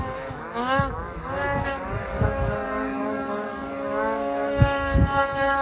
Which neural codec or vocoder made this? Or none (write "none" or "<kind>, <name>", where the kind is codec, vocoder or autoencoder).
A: codec, DAC